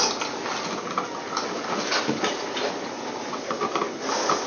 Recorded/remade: recorded